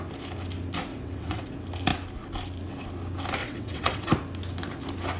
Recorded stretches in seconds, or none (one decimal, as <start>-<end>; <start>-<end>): 0.0-0.9; 1.5-3.4; 4.1-5.2